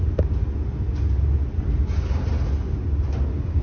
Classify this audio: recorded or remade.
recorded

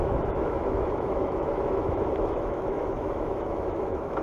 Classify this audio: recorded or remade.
remade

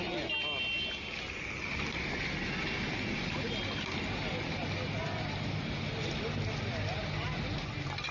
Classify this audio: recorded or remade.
recorded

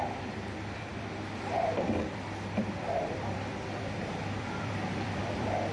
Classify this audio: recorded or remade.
remade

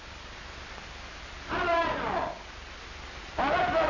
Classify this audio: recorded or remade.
recorded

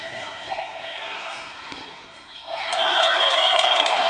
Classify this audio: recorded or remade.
remade